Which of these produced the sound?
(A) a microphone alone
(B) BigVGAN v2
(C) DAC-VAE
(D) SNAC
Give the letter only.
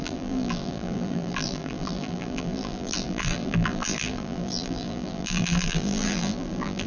B